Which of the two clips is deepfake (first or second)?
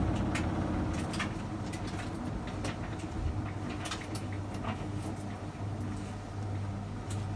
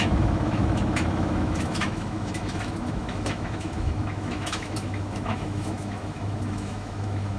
second